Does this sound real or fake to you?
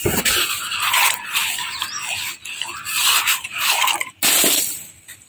real